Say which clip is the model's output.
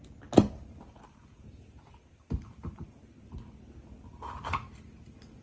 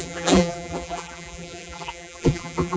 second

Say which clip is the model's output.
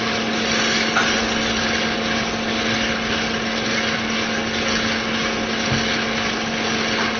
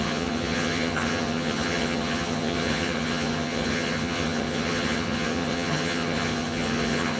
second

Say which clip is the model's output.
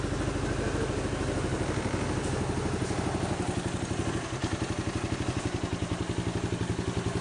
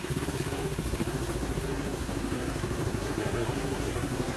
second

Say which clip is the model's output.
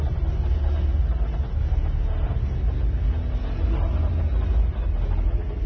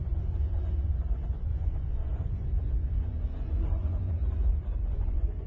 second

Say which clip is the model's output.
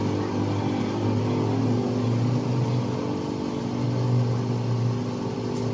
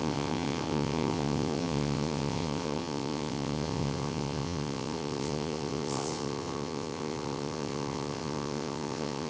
second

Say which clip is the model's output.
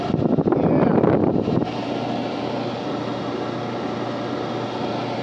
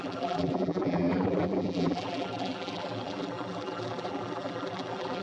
second